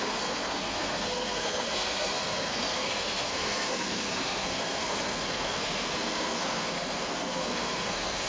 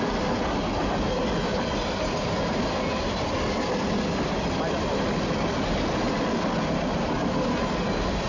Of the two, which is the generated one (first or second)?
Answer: first